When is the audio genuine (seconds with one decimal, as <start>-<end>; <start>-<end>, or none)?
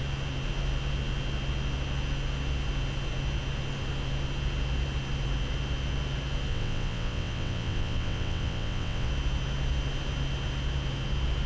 0.0-6.5; 9.1-11.5